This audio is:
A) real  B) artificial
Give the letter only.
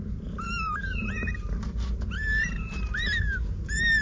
B